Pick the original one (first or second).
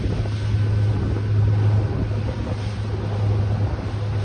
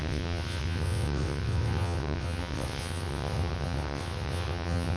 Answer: first